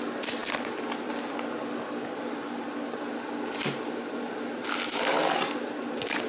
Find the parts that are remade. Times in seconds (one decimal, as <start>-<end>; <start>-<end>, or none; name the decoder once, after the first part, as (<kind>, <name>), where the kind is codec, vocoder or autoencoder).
none